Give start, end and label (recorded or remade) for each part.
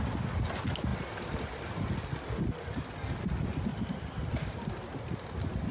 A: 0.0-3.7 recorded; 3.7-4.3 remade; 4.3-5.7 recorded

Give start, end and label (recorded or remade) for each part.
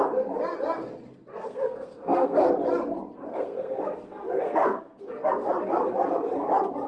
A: 0.0-1.3 recorded; 1.3-2.5 remade; 2.5-3.3 recorded; 3.3-5.1 remade; 5.1-6.9 recorded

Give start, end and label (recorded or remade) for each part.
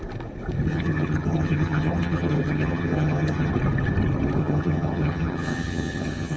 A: 0.0-0.7 recorded; 0.7-3.5 remade; 3.5-4.4 recorded; 4.4-6.4 remade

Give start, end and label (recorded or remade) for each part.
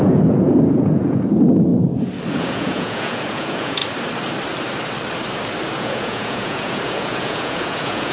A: 0.0-1.7 remade; 1.7-2.3 recorded; 2.3-3.8 remade; 3.8-5.7 recorded; 5.7-8.1 remade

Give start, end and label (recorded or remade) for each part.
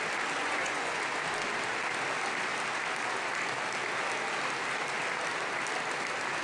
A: 0.0-0.4 recorded; 0.4-1.0 remade; 1.0-6.4 recorded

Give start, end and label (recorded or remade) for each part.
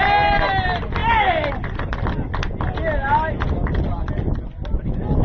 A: 0.0-5.2 recorded